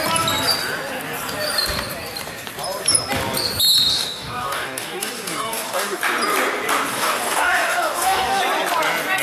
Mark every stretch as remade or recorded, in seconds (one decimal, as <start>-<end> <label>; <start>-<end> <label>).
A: 0.0-3.9 recorded; 3.9-6.0 remade; 6.0-6.9 recorded; 6.9-8.4 remade; 8.4-9.2 recorded